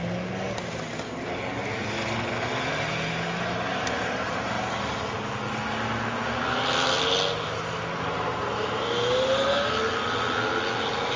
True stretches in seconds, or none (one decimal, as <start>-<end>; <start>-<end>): 0.0-3.7; 5.1-11.2